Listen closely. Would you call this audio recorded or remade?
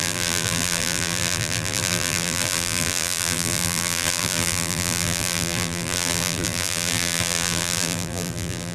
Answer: remade